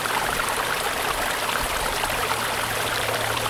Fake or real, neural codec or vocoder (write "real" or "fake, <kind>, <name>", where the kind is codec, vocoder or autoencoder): fake, vocoder, BigVGAN v2